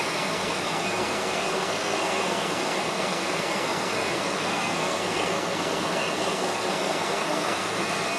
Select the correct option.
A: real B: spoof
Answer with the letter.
B